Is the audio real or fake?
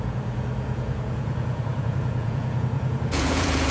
fake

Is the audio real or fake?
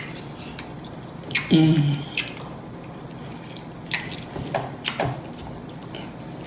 real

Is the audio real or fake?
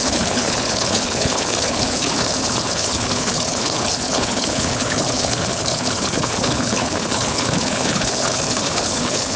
fake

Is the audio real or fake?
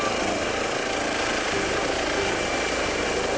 real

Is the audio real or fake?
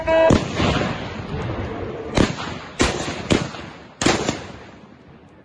real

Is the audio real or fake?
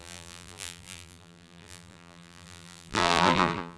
fake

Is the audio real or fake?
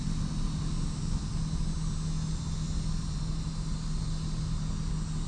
real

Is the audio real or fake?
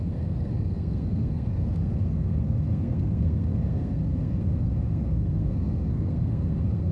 fake